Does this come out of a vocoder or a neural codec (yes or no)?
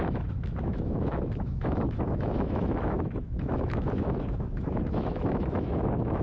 yes